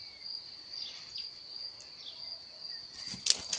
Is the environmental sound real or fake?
real